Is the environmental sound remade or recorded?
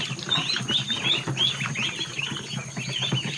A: recorded